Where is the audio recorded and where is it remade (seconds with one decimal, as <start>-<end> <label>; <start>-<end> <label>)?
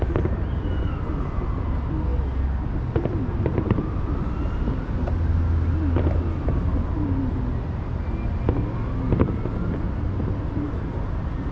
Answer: 0.0-11.5 recorded